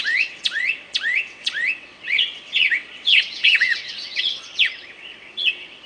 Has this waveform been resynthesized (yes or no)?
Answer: yes